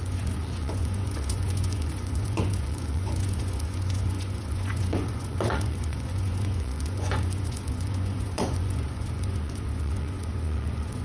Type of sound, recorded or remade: remade